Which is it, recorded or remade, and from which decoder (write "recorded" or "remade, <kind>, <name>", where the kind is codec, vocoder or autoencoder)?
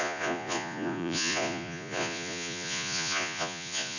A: remade, vocoder, Vocos